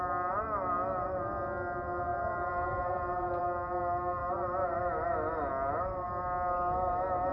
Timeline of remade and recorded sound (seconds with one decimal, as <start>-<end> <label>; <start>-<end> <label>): 0.0-2.1 recorded; 2.1-3.4 remade; 3.4-4.2 recorded; 4.2-5.5 remade; 5.5-7.3 recorded